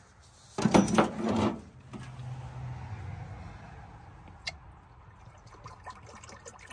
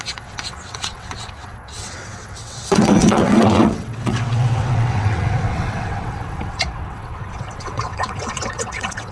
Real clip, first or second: first